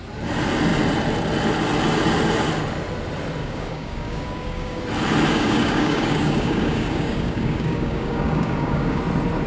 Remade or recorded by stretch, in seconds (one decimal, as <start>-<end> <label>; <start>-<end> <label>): 0.0-3.4 recorded; 3.4-4.8 remade; 4.8-5.3 recorded; 5.3-9.0 remade; 9.0-9.5 recorded